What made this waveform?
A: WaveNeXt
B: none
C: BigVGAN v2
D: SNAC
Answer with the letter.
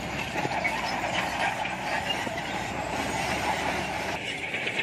C